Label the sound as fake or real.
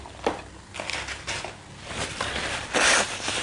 real